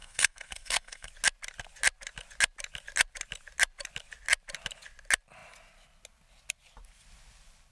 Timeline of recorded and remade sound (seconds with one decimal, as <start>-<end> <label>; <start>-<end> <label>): 0.0-1.1 remade; 1.1-7.7 recorded

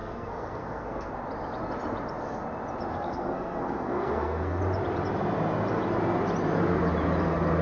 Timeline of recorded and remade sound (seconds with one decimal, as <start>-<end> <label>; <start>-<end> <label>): 0.0-1.1 remade; 1.1-2.9 recorded; 2.9-4.6 remade; 4.6-7.6 recorded

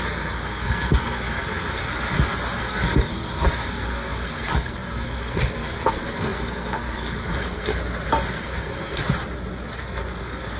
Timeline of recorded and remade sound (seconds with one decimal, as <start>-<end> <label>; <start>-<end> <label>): 0.0-1.8 remade; 1.8-2.6 recorded; 2.6-7.7 remade; 7.7-8.3 recorded; 8.3-9.0 remade; 9.0-9.8 recorded; 9.8-10.6 remade

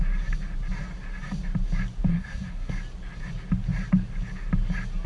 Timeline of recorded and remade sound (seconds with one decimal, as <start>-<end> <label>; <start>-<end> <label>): 0.0-2.1 recorded; 2.1-2.7 remade; 2.7-5.1 recorded

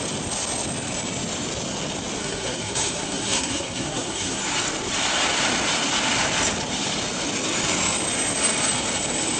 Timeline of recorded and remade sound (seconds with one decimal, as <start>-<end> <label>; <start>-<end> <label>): 0.0-2.2 recorded; 2.2-4.4 remade; 4.4-9.4 recorded

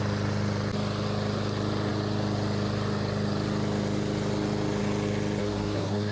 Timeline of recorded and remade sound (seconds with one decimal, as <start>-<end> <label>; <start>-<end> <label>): 0.0-5.4 recorded; 5.4-6.1 remade